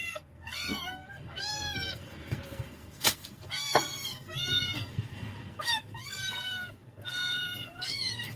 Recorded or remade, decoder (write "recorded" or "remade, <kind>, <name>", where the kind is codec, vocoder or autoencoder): remade, codec, SNAC